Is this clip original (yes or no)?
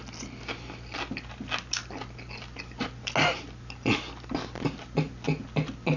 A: yes